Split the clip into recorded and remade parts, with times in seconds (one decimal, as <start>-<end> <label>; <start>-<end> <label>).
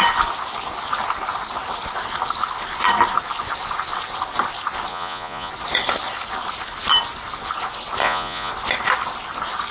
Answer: 0.0-4.9 recorded; 4.9-5.5 remade; 5.5-8.0 recorded; 8.0-8.5 remade; 8.5-9.7 recorded